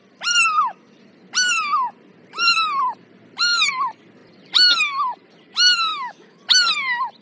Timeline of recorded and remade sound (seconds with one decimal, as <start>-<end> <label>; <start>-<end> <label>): 0.0-5.9 recorded; 5.9-6.4 remade; 6.4-7.2 recorded